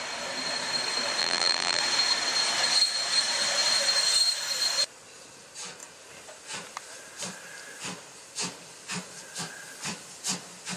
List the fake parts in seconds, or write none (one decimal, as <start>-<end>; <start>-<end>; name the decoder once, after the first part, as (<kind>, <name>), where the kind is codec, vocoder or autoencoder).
1.2-1.8 (vocoder, BigVGAN v2)